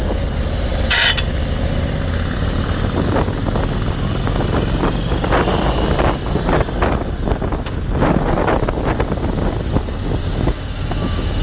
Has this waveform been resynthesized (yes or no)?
no